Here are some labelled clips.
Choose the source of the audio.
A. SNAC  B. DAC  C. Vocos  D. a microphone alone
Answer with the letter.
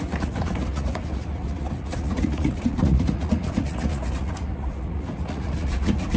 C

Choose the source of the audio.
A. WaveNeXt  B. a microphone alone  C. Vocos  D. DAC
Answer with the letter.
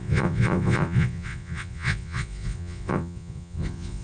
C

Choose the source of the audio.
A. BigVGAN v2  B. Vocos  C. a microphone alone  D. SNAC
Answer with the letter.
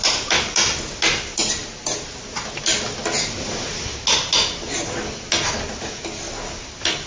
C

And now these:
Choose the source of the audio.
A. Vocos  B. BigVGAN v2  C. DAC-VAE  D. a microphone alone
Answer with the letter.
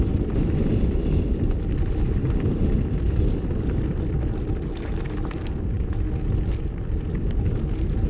D